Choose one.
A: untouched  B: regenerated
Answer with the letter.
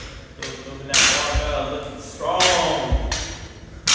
A